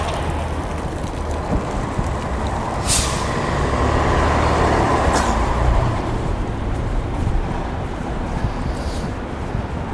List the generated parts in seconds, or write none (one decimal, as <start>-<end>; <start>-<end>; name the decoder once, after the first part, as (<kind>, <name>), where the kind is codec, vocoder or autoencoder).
4.9-7.3 (vocoder, BigVGAN v2)